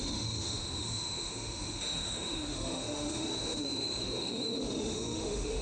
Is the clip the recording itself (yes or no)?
no